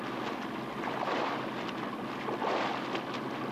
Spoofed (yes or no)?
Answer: no